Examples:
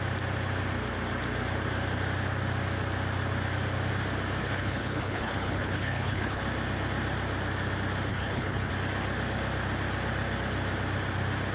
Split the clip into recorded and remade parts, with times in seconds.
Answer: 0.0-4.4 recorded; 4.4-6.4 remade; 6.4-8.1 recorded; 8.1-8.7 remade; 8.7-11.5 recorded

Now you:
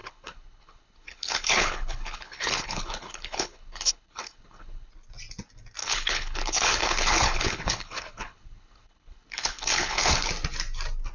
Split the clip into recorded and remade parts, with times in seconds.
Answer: 0.0-4.9 remade; 4.9-5.8 recorded; 5.8-10.3 remade; 10.3-11.1 recorded

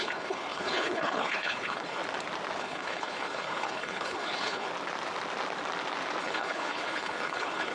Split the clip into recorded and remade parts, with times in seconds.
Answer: 0.0-2.0 remade; 2.0-2.6 recorded; 2.6-4.7 remade; 4.7-6.2 recorded; 6.2-7.7 remade